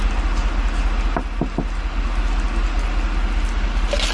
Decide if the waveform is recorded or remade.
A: recorded